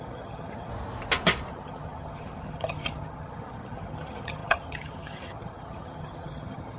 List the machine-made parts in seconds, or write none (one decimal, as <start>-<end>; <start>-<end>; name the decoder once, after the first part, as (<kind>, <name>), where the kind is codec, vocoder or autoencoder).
0.0-0.7 (vocoder, HiFi-GAN); 1.5-6.8